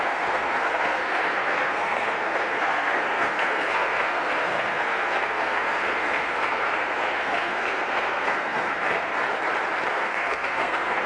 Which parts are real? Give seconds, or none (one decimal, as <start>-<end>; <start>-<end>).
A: 9.1-9.9